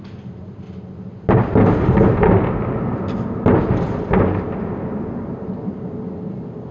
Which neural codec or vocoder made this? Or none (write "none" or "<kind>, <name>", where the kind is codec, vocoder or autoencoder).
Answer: none